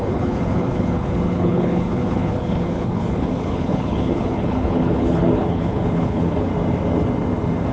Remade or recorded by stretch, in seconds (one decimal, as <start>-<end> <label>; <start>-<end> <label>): 0.0-6.5 remade; 6.5-7.7 recorded